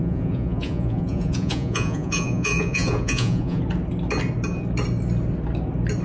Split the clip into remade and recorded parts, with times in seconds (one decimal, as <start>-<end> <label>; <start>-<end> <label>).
0.0-3.6 remade; 3.6-6.0 recorded